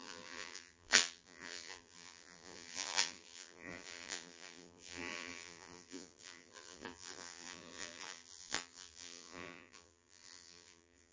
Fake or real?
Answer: fake